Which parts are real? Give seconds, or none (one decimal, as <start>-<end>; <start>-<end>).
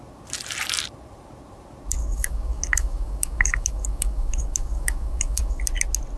0.0-2.0; 5.6-6.2